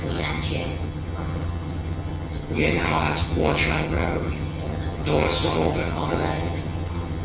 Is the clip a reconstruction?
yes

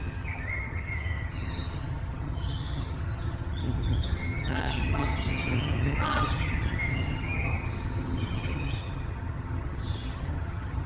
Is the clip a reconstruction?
yes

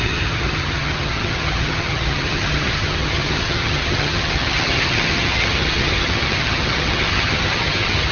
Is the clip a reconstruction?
yes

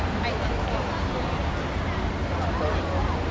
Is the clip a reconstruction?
no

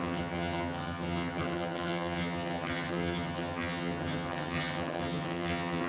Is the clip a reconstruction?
yes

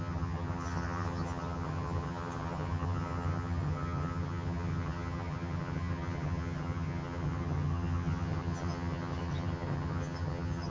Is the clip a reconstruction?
yes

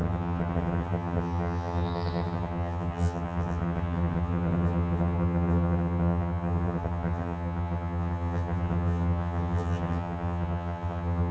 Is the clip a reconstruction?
yes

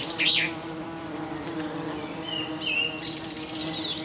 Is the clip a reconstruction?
no